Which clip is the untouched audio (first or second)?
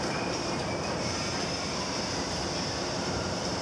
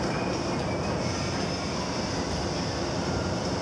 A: second